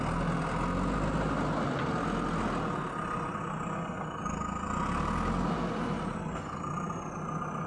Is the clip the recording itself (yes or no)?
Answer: yes